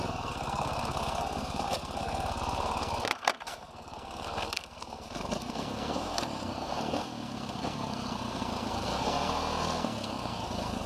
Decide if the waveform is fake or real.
fake